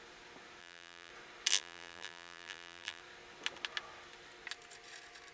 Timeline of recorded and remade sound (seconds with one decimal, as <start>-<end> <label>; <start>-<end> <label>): 0.0-0.6 recorded; 0.6-1.1 remade; 1.1-1.5 recorded; 1.5-3.0 remade; 3.0-5.3 recorded